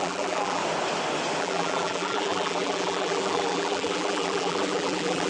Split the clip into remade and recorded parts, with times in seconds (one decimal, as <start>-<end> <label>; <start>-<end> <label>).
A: 0.0-0.6 remade; 0.6-1.4 recorded; 1.4-5.3 remade